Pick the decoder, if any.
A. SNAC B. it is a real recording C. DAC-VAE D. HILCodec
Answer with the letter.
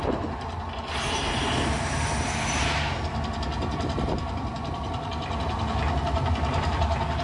B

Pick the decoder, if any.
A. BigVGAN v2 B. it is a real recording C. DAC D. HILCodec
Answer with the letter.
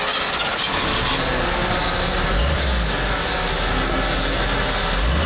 B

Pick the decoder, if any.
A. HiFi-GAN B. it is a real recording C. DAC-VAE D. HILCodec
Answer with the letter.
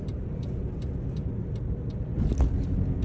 B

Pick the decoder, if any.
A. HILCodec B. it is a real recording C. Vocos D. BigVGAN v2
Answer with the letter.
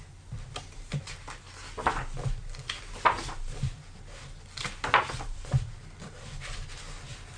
B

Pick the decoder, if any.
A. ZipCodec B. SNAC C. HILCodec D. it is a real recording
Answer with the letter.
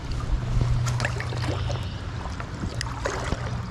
D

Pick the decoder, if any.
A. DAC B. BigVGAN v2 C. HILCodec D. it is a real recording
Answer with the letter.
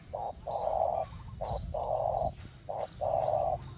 D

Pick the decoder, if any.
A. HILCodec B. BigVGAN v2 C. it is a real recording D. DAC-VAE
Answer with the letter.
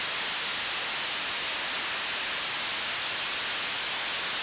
C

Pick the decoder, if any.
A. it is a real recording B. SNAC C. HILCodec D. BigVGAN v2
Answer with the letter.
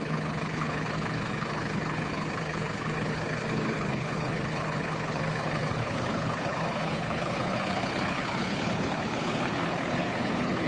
C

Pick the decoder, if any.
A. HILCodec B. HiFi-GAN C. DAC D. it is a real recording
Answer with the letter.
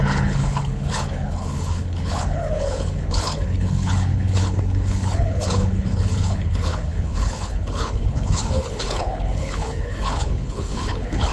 A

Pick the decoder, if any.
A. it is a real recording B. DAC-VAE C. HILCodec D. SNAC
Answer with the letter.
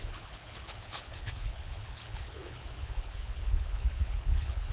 C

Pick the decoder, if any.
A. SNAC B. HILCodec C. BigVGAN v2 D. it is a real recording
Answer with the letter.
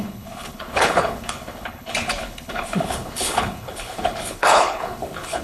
B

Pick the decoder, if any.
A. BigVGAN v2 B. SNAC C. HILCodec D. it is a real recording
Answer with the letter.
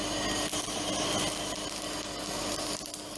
D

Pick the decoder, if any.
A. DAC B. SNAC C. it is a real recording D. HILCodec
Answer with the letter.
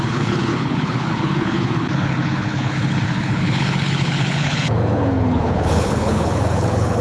D